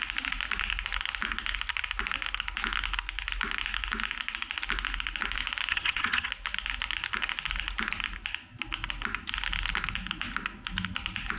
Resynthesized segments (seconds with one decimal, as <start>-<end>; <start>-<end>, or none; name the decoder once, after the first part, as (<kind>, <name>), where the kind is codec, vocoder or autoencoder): 5.7-6.3 (vocoder, HiFi-GAN)